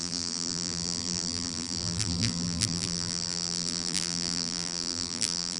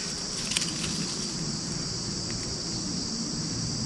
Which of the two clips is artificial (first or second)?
first